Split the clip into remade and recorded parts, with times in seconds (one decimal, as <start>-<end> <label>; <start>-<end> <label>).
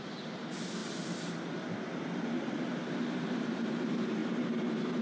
0.0-5.0 recorded